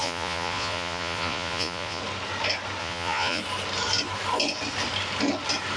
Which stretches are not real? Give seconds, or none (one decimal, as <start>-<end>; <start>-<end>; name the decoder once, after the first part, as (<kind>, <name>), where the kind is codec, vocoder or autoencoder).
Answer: 0.0-2.0 (vocoder, Vocos); 2.8-3.4